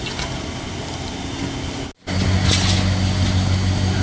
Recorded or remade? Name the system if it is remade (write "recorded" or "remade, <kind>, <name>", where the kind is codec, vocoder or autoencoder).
recorded